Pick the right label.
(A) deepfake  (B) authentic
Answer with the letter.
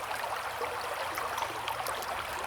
B